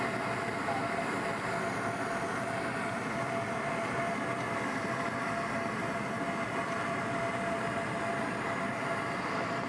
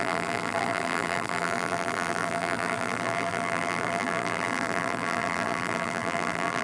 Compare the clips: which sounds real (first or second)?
first